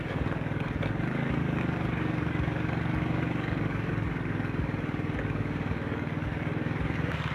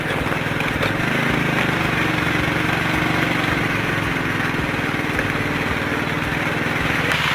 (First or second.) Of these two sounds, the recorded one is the second